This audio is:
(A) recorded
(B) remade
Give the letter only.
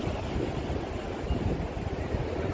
A